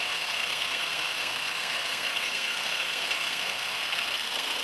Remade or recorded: remade